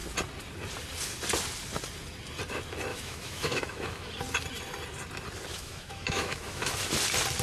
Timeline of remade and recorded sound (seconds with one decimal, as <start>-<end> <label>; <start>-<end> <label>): 0.0-2.9 recorded; 2.9-4.1 remade; 4.1-5.5 recorded; 5.5-6.7 remade; 6.7-7.4 recorded